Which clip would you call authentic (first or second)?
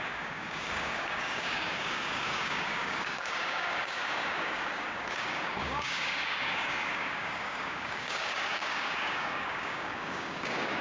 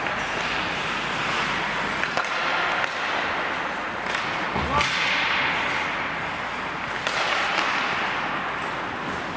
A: second